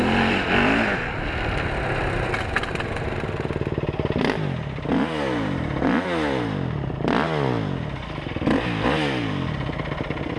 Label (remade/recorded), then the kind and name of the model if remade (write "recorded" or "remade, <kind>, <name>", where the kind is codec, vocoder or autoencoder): recorded